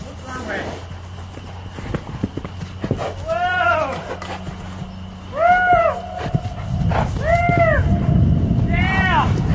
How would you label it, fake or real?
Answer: real